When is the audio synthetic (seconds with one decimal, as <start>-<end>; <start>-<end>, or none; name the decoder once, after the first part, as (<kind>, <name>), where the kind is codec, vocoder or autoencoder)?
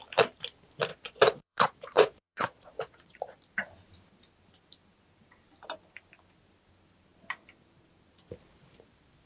0.9-3.4 (vocoder, Vocos)